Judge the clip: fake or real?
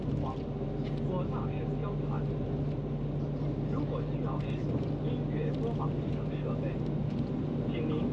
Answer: real